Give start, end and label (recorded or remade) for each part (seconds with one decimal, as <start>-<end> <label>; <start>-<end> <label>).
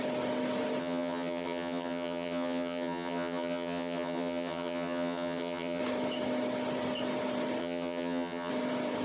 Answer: 0.0-0.8 recorded; 0.8-5.8 remade; 5.8-7.6 recorded; 7.6-8.5 remade; 8.5-9.0 recorded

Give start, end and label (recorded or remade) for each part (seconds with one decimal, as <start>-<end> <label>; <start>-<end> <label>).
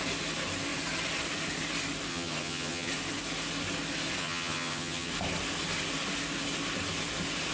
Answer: 0.0-2.1 recorded; 2.1-2.9 remade; 2.9-4.2 recorded; 4.2-5.1 remade; 5.1-7.5 recorded